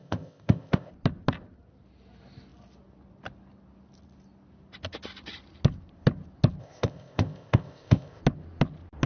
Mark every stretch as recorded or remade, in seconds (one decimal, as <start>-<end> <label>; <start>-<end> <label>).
0.0-0.9 remade; 0.9-6.6 recorded; 6.6-8.2 remade; 8.2-9.1 recorded